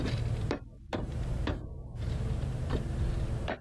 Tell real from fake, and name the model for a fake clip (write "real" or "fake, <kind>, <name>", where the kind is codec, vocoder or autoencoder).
fake, vocoder, BigVGAN v2